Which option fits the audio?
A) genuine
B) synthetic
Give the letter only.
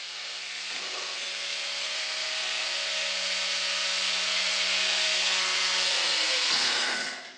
B